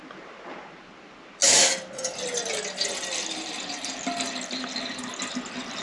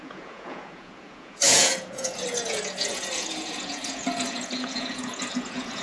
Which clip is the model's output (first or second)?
second